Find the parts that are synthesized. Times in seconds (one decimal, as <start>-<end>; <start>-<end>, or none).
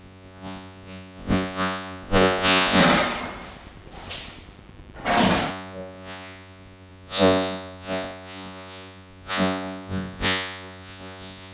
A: 0.0-2.8; 5.5-11.5